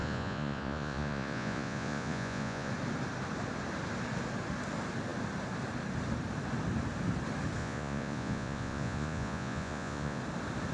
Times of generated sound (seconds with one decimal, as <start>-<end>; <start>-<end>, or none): 0.0-2.7; 7.6-10.2